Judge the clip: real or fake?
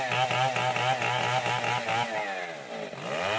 real